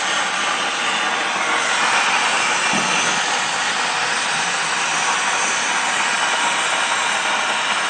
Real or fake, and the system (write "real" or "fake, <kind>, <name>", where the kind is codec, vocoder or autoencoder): real